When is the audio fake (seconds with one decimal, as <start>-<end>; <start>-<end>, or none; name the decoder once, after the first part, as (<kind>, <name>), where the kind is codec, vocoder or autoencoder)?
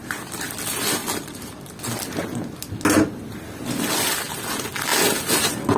none